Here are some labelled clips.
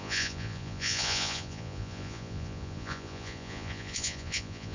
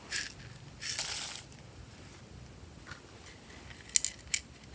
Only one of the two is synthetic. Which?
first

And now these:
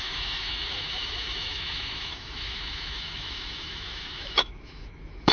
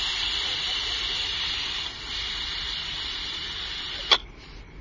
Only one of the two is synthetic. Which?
first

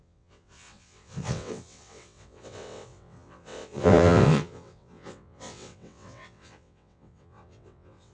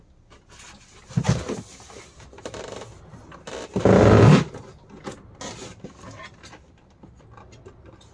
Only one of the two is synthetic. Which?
first